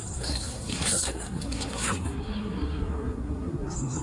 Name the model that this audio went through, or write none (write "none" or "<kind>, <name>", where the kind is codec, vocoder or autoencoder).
codec, SNAC